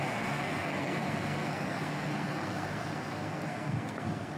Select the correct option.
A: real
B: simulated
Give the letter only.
B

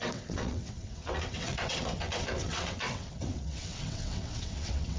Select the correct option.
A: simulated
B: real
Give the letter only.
A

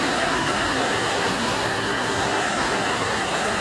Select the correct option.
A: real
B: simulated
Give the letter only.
B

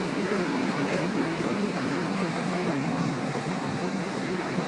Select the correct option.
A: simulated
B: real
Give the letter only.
A